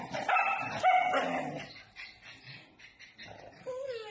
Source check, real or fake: real